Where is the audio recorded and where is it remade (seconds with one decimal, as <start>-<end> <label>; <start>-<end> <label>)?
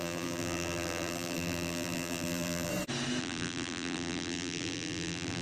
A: 0.0-2.7 remade; 2.7-3.2 recorded; 3.2-5.4 remade